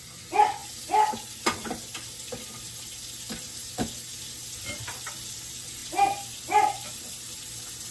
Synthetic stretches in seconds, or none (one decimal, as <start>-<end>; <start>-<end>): none